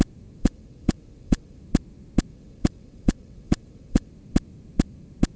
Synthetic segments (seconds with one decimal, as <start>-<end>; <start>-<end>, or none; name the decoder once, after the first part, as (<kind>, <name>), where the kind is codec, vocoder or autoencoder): 0.4-1.6 (vocoder, WaveNeXt); 2.3-4.1